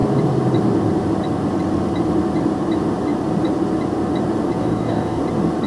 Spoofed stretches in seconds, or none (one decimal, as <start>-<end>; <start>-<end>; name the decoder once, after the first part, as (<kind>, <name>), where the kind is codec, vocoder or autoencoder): 4.6-5.2 (codec, DAC)